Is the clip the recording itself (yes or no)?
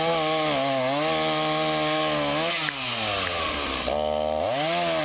yes